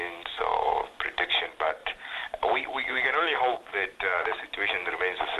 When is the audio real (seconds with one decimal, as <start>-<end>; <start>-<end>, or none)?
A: 0.0-1.8; 5.0-5.4